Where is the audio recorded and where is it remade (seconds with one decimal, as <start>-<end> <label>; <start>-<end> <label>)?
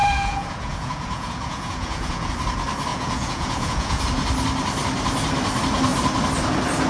0.0-2.3 remade; 2.3-2.9 recorded; 2.9-4.0 remade; 4.0-6.9 recorded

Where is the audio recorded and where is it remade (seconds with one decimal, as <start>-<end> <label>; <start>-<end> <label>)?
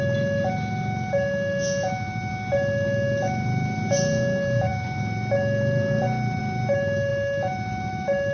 0.0-8.3 recorded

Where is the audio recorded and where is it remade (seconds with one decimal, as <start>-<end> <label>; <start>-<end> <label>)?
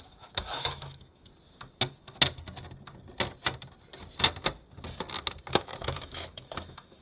0.0-1.3 remade; 1.3-5.5 recorded; 5.5-7.0 remade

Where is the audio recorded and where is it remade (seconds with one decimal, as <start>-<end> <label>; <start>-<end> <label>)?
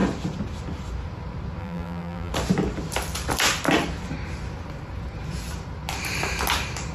0.0-1.6 recorded; 1.6-2.3 remade; 2.3-6.9 recorded